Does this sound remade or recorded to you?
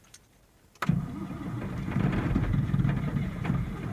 remade